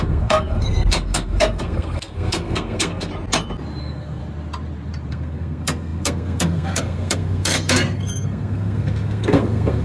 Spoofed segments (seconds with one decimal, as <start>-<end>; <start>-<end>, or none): 0.0-3.1; 3.8-4.2; 5.1-9.8